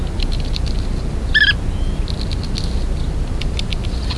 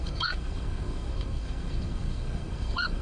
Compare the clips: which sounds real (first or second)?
first